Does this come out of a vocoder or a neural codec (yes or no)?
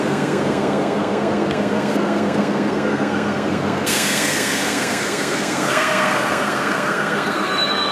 yes